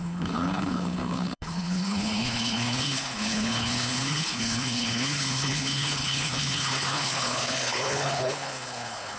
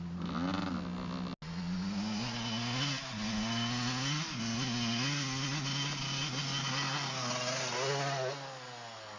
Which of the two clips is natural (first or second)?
second